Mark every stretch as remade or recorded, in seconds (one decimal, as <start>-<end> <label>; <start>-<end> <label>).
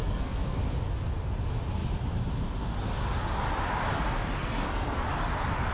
0.0-0.6 remade; 0.6-4.4 recorded; 4.4-5.0 remade; 5.0-5.7 recorded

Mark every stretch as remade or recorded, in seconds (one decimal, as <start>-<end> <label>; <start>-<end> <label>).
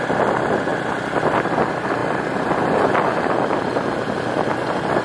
0.0-5.0 recorded